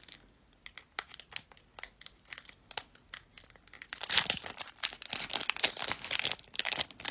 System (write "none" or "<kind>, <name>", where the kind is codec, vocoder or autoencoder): none